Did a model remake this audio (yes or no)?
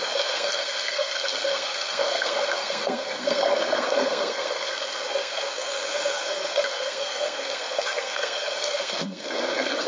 yes